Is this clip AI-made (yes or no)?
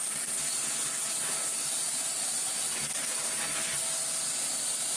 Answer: no